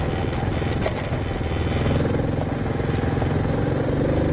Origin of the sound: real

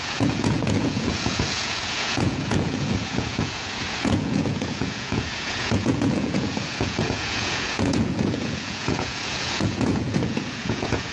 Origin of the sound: fake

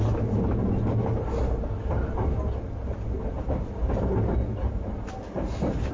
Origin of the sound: real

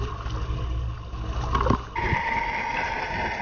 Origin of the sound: real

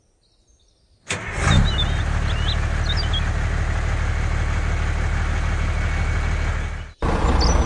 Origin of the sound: real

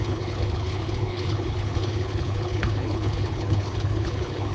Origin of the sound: fake